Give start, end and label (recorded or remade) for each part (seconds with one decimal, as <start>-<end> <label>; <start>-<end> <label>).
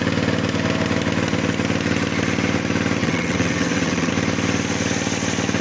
0.0-3.0 recorded; 3.0-4.1 remade; 4.1-5.6 recorded